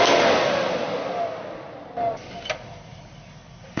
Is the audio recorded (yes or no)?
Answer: yes